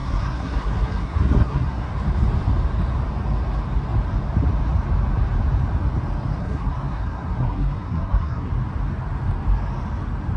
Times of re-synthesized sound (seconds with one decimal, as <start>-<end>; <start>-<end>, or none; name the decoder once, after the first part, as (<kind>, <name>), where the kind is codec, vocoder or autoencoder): 0.0-1.9 (codec, SNAC); 6.4-8.5